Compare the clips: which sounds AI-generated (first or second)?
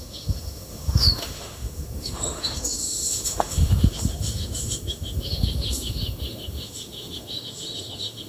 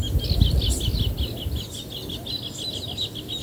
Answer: first